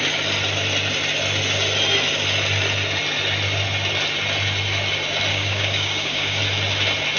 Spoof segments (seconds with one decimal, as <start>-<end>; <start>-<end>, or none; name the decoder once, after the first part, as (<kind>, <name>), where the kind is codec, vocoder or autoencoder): 5.3-6.4 (codec, DAC)